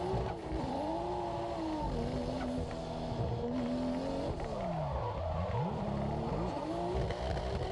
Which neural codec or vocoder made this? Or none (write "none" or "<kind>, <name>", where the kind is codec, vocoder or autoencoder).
none